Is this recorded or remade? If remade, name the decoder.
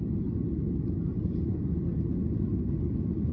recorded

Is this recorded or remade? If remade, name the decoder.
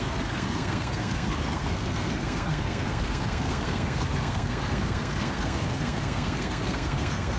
remade, codec, SNAC